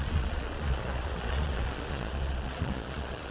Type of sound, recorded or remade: remade